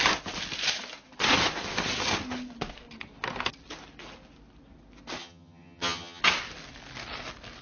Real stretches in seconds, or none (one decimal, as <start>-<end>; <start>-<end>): 0.0-5.2; 6.2-7.6